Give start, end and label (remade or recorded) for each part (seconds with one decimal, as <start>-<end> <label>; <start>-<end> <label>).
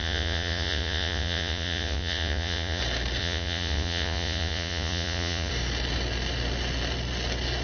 0.0-2.8 remade; 2.8-3.2 recorded; 3.2-5.5 remade; 5.5-7.6 recorded